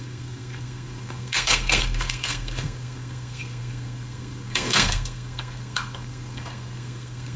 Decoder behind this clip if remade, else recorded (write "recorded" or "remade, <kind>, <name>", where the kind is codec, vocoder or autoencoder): remade, codec, SNAC